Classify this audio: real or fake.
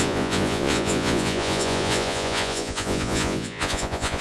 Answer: fake